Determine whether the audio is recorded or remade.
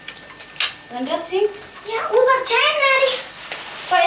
recorded